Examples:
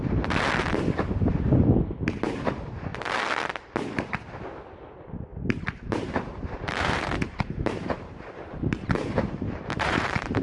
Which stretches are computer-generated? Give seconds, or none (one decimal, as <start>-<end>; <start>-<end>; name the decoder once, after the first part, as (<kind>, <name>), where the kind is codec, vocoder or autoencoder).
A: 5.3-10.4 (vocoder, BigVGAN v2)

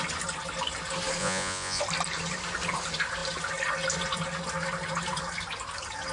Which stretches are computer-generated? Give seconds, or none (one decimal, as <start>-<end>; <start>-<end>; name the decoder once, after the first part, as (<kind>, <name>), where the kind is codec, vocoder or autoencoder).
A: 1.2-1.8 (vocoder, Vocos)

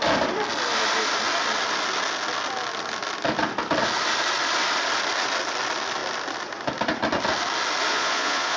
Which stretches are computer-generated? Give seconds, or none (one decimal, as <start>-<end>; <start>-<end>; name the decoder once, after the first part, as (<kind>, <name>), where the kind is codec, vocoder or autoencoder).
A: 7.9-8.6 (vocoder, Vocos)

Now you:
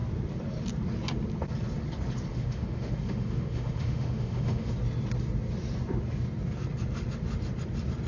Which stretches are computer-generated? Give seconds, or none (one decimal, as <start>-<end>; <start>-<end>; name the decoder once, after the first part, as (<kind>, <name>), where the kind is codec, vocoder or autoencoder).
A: 2.3-4.7 (autoencoder, DAC-VAE)

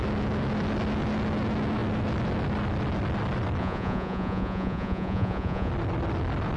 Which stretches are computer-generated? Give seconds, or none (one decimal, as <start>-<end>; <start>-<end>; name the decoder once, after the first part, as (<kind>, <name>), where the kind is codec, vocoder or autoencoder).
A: 3.6-5.7 (vocoder, Vocos)

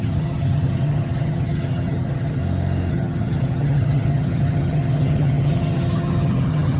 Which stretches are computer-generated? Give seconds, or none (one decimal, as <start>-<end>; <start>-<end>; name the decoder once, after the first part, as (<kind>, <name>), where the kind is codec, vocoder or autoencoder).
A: 0.0-2.4 (vocoder, HiFi-GAN); 2.9-6.8

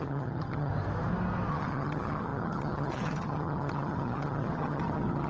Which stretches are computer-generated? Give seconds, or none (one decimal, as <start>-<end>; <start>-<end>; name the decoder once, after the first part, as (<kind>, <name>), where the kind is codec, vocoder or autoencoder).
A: 0.0-0.7 (vocoder, HiFi-GAN); 1.5-5.3

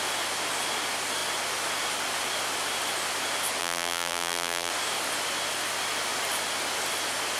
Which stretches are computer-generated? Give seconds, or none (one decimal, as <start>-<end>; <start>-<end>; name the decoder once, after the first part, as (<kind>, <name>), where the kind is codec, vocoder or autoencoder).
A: 3.6-4.7 (vocoder, BigVGAN v2)